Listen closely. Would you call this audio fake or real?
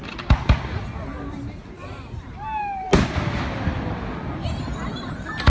real